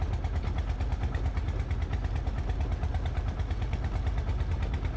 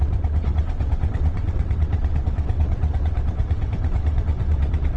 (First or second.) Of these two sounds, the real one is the first